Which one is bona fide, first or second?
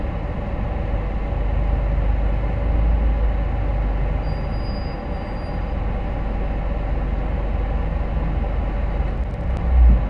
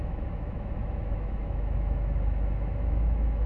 first